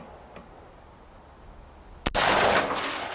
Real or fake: real